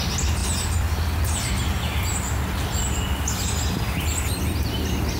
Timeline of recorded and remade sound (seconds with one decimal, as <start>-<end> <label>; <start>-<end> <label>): 0.0-5.2 recorded